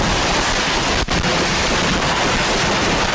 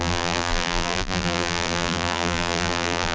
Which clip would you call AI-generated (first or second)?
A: second